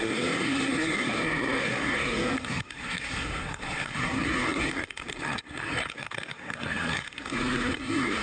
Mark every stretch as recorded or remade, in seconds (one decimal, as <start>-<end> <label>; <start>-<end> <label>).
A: 0.0-8.2 remade

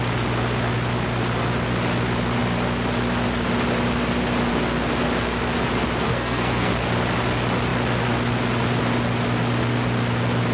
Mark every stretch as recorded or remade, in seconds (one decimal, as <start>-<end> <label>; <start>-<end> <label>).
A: 0.0-6.1 recorded; 6.1-6.7 remade; 6.7-10.5 recorded